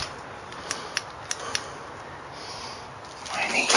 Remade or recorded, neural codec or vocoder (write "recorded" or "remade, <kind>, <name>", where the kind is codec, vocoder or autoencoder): recorded